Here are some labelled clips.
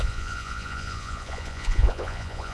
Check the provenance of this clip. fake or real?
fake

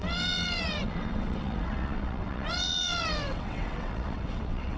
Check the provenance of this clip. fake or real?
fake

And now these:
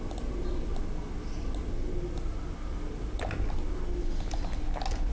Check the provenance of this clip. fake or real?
real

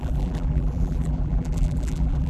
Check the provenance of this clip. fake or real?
fake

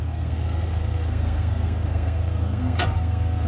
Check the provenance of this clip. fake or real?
fake